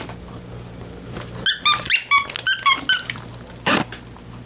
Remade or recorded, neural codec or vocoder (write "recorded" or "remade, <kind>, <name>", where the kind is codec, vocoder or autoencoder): recorded